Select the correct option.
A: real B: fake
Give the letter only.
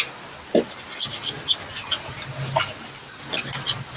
A